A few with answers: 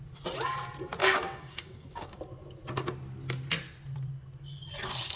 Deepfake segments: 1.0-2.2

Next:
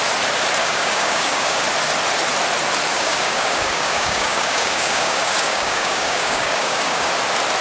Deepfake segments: 0.6-1.6; 2.9-7.1

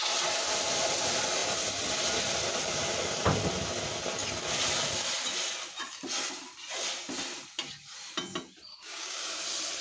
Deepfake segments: 8.7-9.3

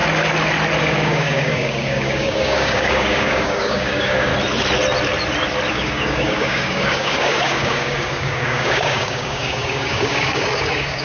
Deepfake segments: 0.8-4.3; 5.7-11.0

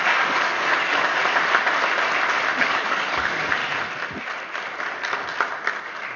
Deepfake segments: 0.0-1.2; 2.6-3.6; 5.8-6.2

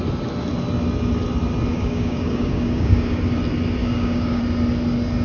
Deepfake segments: 1.7-3.2; 3.8-4.4